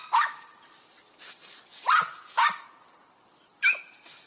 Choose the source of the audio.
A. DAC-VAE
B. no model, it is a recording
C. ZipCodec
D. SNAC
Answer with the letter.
B